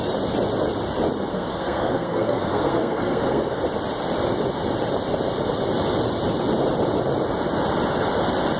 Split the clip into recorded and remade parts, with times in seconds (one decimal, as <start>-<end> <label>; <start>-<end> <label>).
0.0-1.3 recorded; 1.3-3.6 remade; 3.6-8.6 recorded